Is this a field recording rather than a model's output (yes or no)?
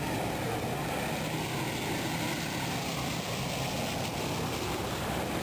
yes